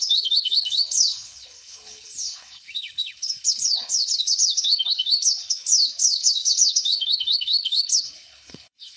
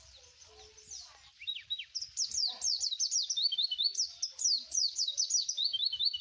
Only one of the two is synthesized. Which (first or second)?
first